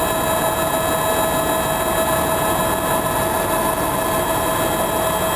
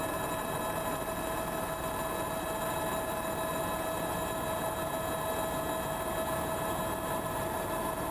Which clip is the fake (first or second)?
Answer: second